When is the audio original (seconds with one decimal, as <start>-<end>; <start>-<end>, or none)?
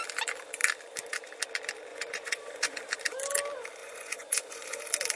0.0-1.9; 2.8-3.8; 4.8-5.2